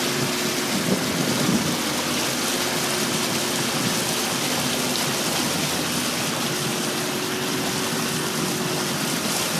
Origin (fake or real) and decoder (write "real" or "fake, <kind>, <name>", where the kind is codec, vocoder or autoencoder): real